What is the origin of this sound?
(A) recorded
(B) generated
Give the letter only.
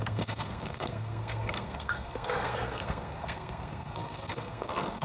B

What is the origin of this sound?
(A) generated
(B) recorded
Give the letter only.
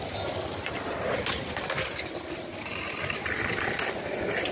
B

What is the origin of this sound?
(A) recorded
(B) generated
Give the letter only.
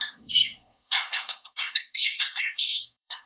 B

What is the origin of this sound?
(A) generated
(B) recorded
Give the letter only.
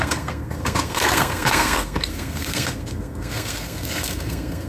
A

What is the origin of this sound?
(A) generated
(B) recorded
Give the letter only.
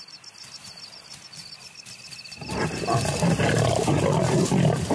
B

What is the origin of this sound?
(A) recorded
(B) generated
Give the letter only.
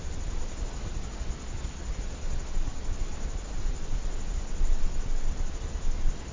A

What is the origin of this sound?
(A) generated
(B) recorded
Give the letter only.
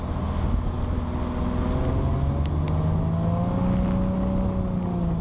B